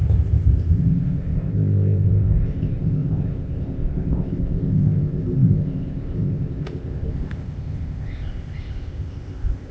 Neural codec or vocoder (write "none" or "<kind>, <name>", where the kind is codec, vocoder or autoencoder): codec, ZipCodec